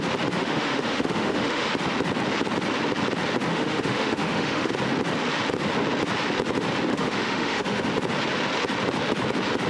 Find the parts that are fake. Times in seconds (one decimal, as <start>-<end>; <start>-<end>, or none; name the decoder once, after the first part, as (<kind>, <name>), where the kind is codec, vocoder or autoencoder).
0.4-1.7 (autoencoder, DAC-VAE); 3.5-4.7; 6.9-7.9